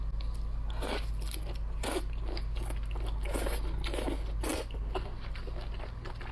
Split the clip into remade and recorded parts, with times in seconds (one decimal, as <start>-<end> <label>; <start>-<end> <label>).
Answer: 0.0-6.3 recorded